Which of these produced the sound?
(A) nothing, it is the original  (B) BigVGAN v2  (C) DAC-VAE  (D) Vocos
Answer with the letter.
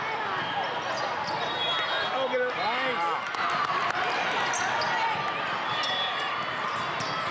A